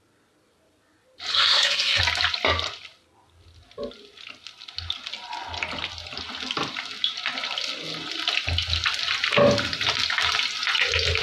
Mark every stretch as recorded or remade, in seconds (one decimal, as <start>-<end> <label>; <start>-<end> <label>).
0.0-1.3 recorded; 1.3-2.0 remade; 2.0-11.2 recorded